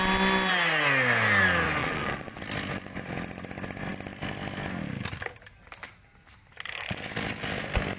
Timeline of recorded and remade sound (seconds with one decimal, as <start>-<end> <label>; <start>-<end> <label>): 0.0-1.8 recorded; 1.8-2.4 remade; 2.4-8.0 recorded